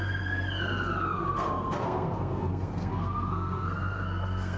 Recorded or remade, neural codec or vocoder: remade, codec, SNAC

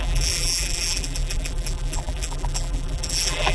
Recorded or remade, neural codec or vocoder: remade, vocoder, BigVGAN v2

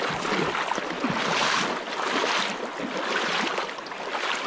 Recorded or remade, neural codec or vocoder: recorded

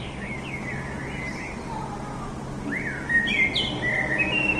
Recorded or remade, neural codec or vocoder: recorded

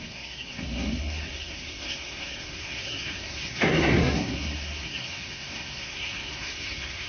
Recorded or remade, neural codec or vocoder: remade, codec, SNAC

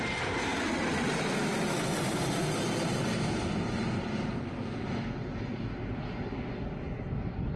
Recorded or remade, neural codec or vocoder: recorded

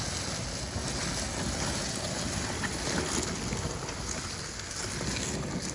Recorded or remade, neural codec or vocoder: recorded